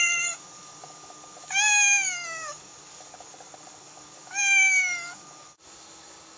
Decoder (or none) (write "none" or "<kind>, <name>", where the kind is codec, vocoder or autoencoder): codec, DAC